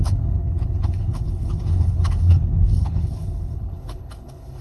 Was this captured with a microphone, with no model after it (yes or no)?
no